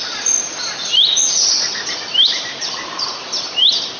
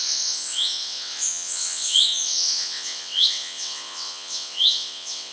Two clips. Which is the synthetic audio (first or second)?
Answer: second